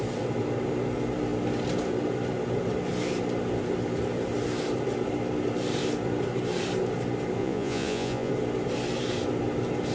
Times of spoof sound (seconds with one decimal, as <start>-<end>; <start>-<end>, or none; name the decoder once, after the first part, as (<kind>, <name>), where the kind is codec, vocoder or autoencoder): 7.4-8.3 (vocoder, Vocos)